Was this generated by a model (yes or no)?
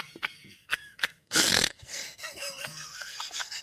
yes